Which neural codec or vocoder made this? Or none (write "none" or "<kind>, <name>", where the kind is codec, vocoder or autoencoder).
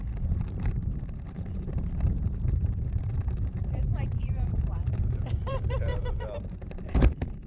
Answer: vocoder, BigVGAN v2